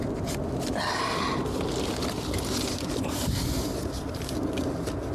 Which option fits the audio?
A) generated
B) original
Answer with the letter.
B